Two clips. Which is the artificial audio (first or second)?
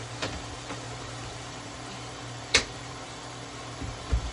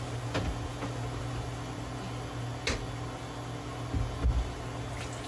first